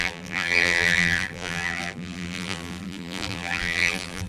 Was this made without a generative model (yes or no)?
no